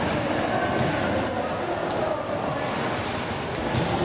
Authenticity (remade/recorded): recorded